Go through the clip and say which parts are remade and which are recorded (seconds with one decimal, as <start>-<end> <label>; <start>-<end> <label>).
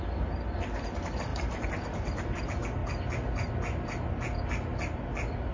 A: 0.0-5.5 recorded